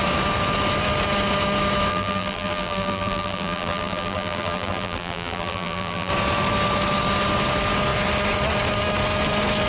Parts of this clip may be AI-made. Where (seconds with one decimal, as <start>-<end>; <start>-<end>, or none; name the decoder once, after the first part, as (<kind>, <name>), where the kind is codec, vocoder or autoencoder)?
1.9-6.1 (vocoder, BigVGAN v2)